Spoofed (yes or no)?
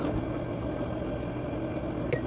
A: no